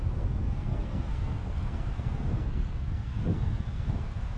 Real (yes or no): no